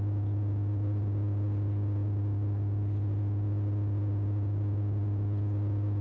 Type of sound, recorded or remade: recorded